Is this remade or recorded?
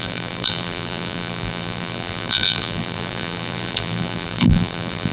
remade